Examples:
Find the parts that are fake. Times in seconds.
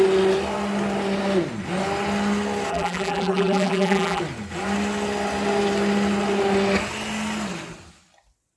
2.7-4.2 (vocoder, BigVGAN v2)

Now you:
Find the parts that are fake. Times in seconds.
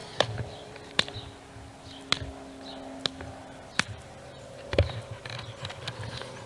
0.0-1.1 (vocoder, BigVGAN v2); 3.4-5.8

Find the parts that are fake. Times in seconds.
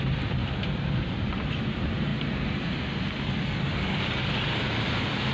0.4-1.0 (vocoder, BigVGAN v2)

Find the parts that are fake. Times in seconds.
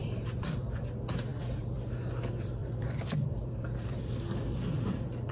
0.0-0.8 (vocoder, BigVGAN v2); 1.3-1.8; 2.6-5.3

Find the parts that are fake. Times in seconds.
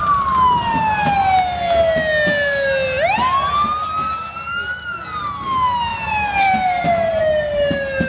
5.9-7.2 (vocoder, BigVGAN v2)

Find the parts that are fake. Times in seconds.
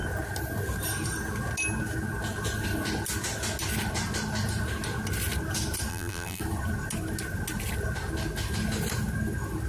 5.9-6.4 (vocoder, BigVGAN v2)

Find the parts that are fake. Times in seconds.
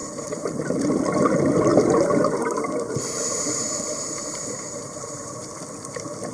0.0-0.6 (vocoder, BigVGAN v2); 1.7-5.5